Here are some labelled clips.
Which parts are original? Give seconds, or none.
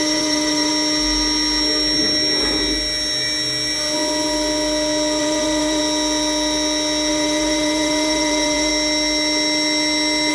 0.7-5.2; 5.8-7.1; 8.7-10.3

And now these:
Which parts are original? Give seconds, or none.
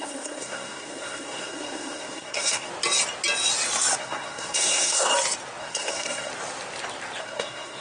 2.7-4.0; 5.1-5.6; 6.3-7.2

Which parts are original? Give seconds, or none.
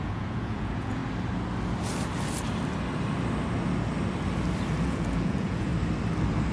1.0-4.8; 5.7-6.5